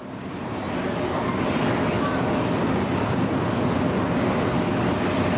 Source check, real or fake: real